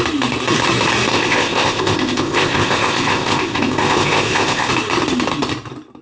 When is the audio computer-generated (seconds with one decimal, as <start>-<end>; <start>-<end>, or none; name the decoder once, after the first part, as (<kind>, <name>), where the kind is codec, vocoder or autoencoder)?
1.1-4.7 (codec, ZipCodec)